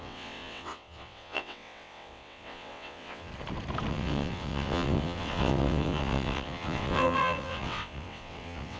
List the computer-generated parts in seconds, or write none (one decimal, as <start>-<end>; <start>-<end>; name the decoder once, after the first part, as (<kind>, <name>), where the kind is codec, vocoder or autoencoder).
0.0-3.3 (vocoder, WaveNeXt); 3.9-8.8